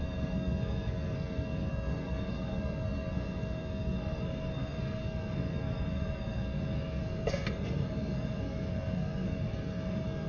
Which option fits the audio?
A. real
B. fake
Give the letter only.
B